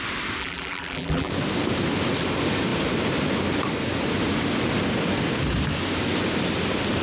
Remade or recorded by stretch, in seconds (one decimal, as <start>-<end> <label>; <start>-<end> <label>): 0.0-0.4 recorded; 0.4-1.3 remade; 1.3-7.0 recorded